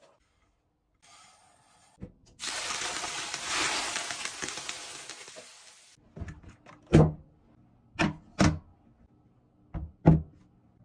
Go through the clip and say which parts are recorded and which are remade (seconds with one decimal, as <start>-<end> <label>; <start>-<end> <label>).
0.0-2.2 recorded; 2.2-3.9 remade; 3.9-10.8 recorded